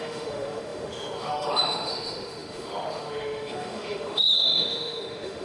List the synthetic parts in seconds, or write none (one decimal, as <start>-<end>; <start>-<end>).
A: 0.0-5.4